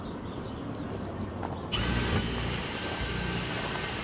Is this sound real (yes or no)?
yes